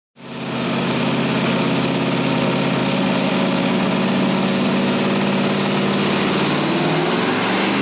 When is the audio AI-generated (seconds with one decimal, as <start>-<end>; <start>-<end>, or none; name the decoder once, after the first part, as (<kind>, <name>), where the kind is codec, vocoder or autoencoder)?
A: none